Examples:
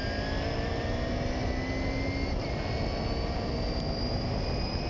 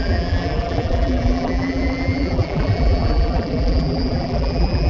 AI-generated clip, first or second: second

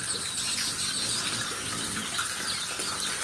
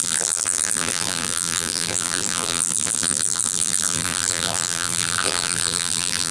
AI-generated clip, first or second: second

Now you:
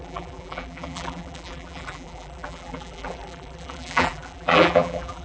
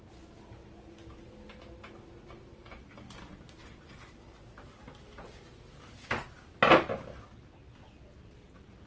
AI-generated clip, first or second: first